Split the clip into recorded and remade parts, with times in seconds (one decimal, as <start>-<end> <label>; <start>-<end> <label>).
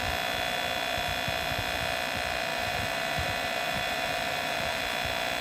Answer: 0.0-2.5 recorded; 2.5-4.8 remade; 4.8-5.4 recorded